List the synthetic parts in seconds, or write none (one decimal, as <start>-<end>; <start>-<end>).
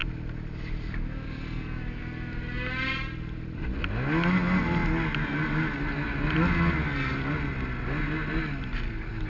none